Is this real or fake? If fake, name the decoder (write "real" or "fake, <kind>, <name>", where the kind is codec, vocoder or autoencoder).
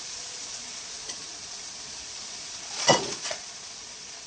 fake, vocoder, Vocos